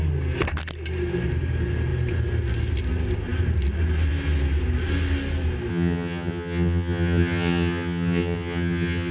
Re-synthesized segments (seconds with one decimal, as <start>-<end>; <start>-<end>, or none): 5.7-9.1